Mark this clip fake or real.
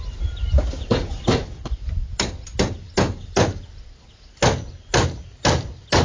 real